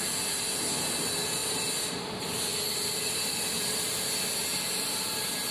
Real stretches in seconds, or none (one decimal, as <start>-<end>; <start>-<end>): 0.0-5.5